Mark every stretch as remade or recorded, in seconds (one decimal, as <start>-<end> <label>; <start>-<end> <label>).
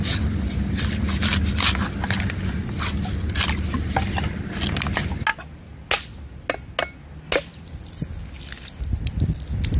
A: 0.0-9.8 recorded